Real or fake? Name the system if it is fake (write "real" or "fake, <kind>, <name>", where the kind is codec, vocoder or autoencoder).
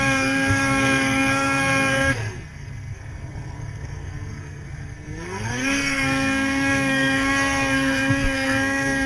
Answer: fake, codec, SNAC